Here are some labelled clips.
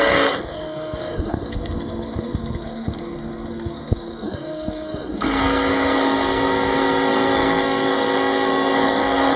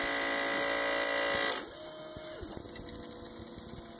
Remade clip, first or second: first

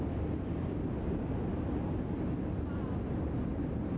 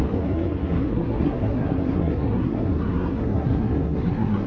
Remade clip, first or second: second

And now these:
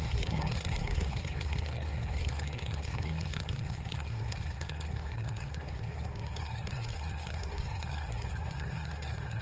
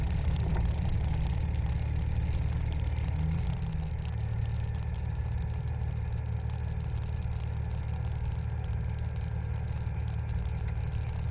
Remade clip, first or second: first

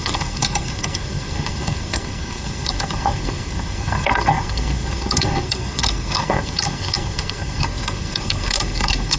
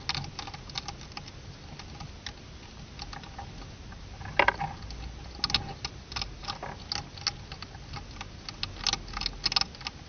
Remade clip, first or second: first